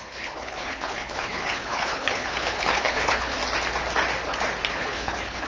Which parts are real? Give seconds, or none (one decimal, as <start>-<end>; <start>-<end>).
3.4-4.7